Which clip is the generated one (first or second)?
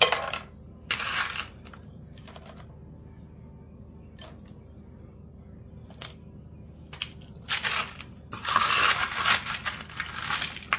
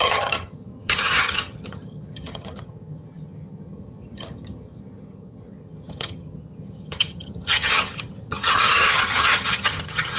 second